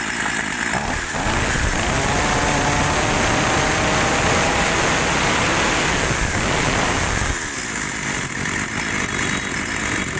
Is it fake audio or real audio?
real